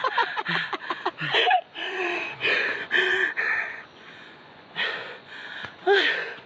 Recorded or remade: remade